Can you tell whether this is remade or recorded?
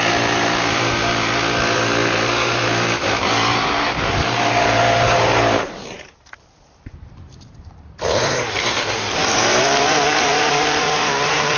remade